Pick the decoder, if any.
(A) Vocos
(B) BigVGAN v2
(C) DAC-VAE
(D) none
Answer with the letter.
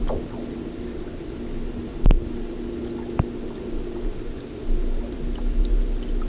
D